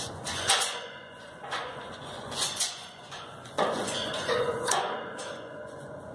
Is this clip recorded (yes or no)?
no